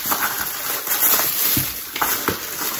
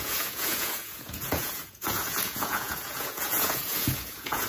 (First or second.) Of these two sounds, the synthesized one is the second